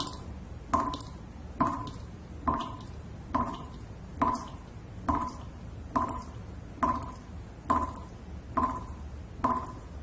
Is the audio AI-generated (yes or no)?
no